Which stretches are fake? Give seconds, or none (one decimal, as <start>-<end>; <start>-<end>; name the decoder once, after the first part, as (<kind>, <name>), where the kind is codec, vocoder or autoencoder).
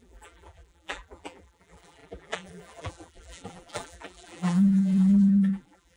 0.0-6.0 (vocoder, BigVGAN v2)